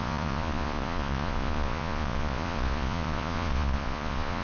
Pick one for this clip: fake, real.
fake